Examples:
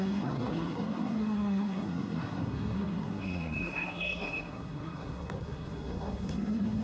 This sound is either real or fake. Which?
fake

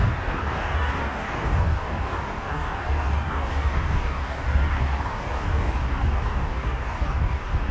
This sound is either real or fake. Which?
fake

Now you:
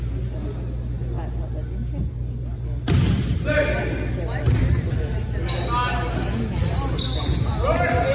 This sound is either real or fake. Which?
real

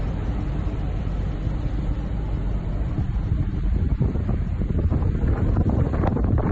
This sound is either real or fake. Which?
fake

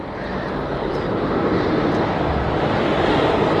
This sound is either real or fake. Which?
real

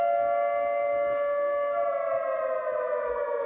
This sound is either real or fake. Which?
real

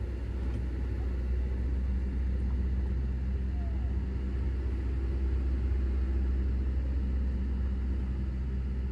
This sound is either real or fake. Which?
real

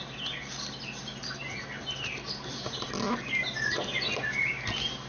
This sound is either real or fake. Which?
real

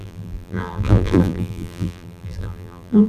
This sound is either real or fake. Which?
fake